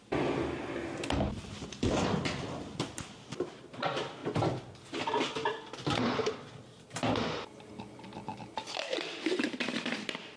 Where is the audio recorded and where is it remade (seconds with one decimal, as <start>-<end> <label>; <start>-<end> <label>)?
0.0-10.4 recorded